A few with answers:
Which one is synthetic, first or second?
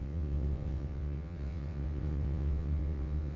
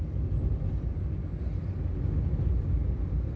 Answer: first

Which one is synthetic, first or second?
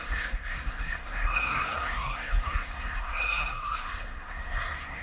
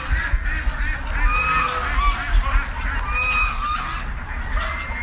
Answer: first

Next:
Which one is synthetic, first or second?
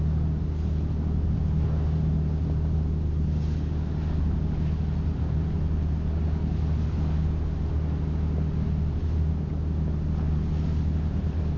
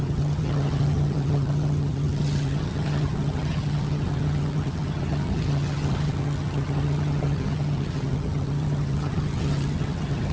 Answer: second